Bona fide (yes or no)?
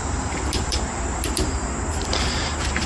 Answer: no